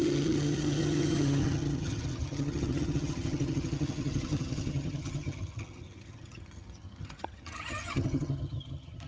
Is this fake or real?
fake